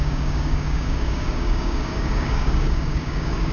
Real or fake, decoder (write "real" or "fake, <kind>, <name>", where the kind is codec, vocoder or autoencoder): fake, codec, DAC